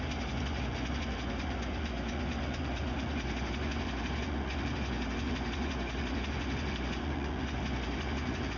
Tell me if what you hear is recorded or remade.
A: remade